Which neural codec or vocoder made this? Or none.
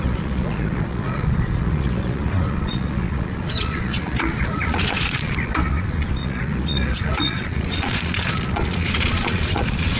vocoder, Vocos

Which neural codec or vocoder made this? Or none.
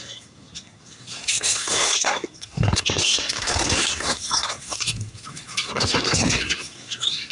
codec, SNAC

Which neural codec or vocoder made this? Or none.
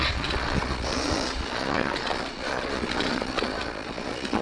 vocoder, Vocos